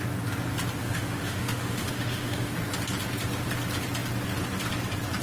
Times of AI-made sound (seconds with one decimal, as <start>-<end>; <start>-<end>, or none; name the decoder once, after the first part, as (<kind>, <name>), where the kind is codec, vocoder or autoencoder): 0.8-2.5 (autoencoder, DAC-VAE)